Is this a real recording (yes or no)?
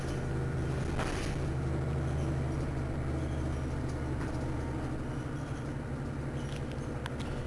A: yes